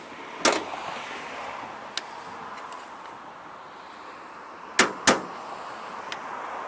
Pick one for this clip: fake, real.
real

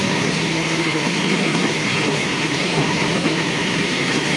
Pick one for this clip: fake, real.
fake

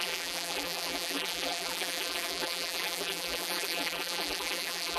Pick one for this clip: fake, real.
fake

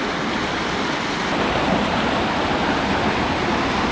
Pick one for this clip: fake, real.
real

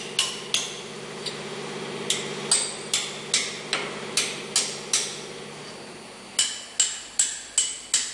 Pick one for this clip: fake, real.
real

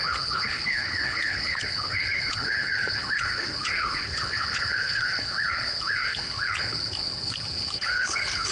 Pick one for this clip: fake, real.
fake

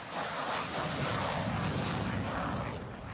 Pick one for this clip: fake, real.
real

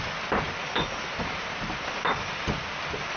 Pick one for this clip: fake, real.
real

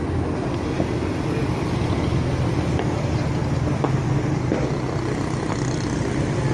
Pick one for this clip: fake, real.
real